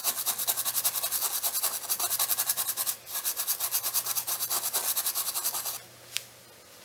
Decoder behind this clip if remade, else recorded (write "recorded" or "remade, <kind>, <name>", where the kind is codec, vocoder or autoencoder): recorded